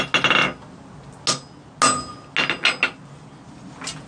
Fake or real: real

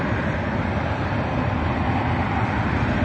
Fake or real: real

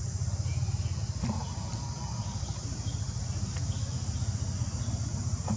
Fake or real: real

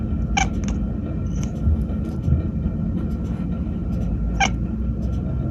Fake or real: real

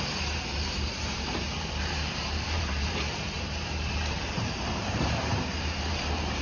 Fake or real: fake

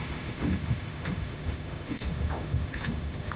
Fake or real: fake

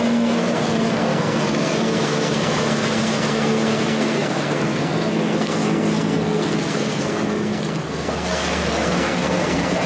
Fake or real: fake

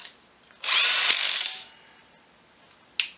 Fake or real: real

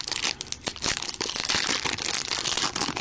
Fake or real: real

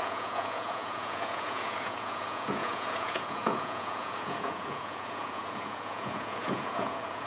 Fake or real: fake